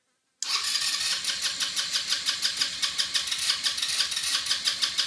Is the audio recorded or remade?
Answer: recorded